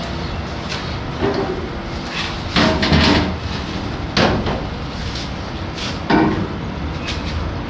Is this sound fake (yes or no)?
no